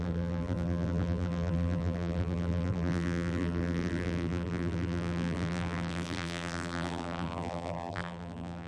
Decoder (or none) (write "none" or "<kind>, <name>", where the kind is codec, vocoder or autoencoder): vocoder, BigVGAN v2